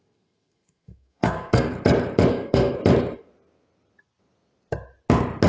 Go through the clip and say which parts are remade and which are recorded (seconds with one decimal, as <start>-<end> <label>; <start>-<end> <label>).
0.0-1.7 remade; 1.7-2.3 recorded; 2.3-2.8 remade; 2.8-5.5 recorded